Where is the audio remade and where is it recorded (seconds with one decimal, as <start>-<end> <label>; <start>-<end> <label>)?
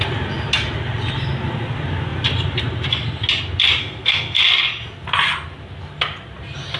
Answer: 0.0-3.8 recorded; 3.8-4.4 remade; 4.4-6.8 recorded